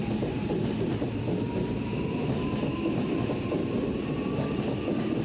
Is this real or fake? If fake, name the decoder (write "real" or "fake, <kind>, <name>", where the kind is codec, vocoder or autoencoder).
real